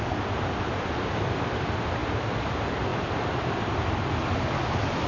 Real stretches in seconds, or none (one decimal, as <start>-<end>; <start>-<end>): 0.0-5.1